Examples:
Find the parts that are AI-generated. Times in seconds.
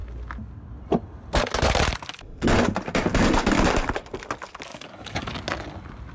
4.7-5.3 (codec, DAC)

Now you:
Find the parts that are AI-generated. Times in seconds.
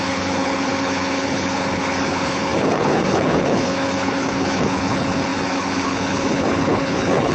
0.0-7.3 (codec, HILCodec)